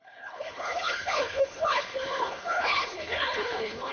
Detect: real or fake fake